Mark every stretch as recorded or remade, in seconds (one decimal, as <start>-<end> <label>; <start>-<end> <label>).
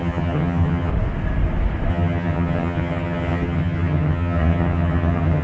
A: 0.0-0.9 remade; 0.9-1.9 recorded; 1.9-5.4 remade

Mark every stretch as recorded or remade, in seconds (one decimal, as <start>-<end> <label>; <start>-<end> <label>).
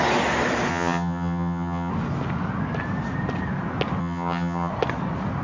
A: 0.0-0.7 recorded; 0.7-1.9 remade; 1.9-4.0 recorded; 4.0-4.7 remade; 4.7-5.4 recorded